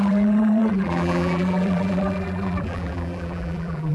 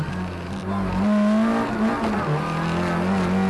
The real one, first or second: second